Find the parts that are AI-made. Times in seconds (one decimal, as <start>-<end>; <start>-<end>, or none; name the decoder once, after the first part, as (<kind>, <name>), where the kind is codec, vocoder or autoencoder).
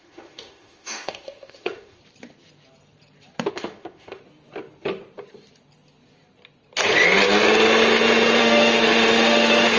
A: 0.0-2.0 (autoencoder, DAC-VAE); 3.5-4.2; 8.4-9.8